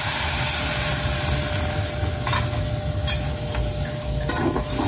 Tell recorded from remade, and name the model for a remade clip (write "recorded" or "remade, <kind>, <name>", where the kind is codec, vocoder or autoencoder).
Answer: recorded